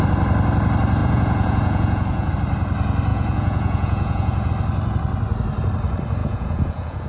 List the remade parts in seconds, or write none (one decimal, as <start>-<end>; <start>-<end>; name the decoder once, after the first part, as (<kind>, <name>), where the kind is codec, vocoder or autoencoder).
1.0-2.3 (vocoder, Vocos); 3.1-4.5; 6.2-7.1